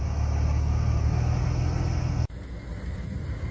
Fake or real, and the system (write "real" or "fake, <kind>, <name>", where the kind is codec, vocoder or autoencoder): real